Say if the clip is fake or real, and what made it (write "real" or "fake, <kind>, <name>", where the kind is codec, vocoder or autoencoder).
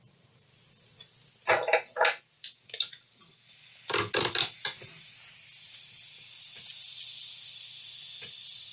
real